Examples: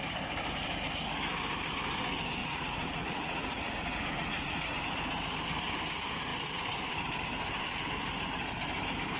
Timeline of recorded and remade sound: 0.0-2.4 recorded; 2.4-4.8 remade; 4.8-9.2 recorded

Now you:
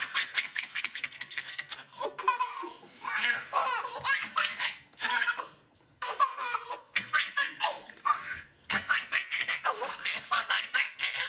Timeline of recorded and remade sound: 0.0-3.6 remade; 3.6-4.3 recorded; 4.3-11.3 remade

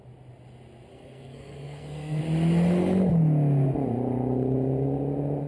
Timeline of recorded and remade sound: 0.0-0.9 recorded; 0.9-2.2 remade; 2.2-5.5 recorded

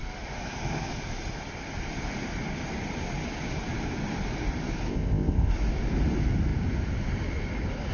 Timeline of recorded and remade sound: 0.0-4.9 recorded; 4.9-5.5 remade; 5.5-7.9 recorded